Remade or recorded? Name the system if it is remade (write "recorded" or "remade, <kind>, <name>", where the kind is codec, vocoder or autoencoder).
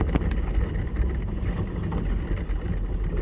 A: recorded